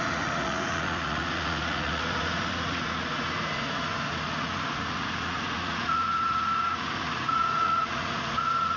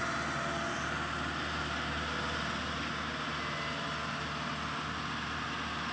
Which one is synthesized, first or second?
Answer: first